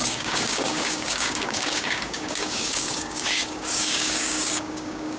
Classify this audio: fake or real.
fake